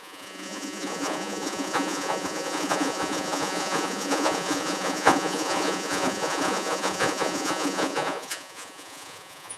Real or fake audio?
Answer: fake